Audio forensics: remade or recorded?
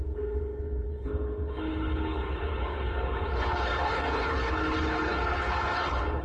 remade